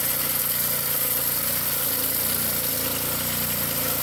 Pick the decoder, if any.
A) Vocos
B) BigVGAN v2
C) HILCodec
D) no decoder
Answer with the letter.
D